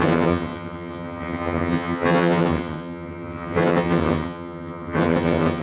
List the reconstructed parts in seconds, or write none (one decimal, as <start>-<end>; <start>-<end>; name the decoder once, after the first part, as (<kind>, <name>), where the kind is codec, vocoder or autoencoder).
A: 0.0-5.6 (vocoder, HiFi-GAN)